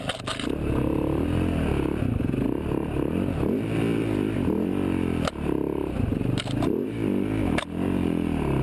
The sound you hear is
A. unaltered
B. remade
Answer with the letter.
A